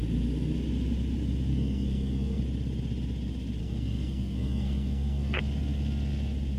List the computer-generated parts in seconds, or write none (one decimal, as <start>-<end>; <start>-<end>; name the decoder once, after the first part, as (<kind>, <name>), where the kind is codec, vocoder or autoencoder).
1.5-2.4 (codec, SNAC); 3.6-5.4